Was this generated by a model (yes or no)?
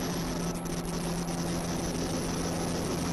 no